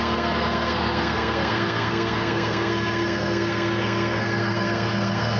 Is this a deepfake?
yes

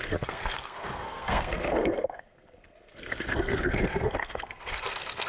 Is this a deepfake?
yes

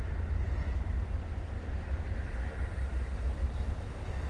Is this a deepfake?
no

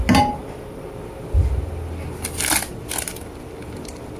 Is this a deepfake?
no